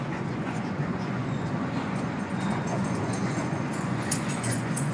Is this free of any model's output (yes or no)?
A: no